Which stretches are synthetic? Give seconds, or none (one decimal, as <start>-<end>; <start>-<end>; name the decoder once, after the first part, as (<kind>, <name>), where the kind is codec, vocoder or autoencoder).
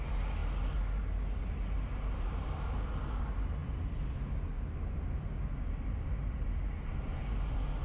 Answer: none